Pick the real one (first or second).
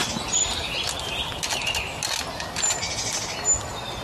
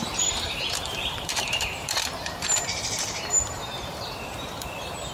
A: first